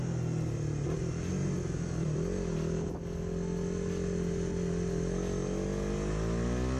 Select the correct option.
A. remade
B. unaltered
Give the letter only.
B